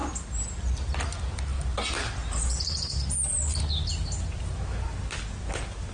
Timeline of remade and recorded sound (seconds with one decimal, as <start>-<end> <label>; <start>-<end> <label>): 0.0-1.5 recorded; 1.5-3.6 remade; 3.6-5.9 recorded